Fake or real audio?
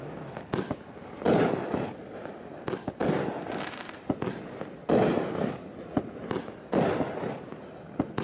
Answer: real